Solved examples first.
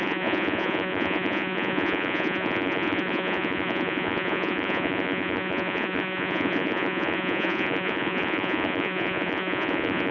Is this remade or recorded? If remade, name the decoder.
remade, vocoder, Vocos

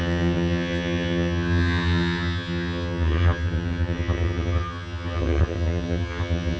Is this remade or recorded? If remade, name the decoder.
remade, vocoder, HiFi-GAN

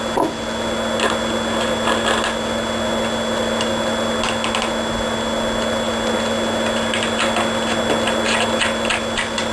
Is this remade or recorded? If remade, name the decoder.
recorded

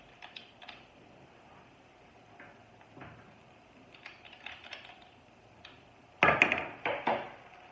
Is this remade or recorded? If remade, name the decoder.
recorded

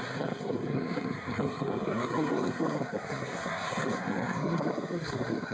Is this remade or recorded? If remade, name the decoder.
remade, codec, SNAC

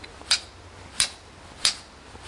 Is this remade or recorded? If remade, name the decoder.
recorded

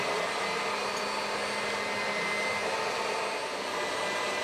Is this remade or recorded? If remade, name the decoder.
recorded